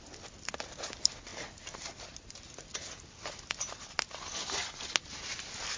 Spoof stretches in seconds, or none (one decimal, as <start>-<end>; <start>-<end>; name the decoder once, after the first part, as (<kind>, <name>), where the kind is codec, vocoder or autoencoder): none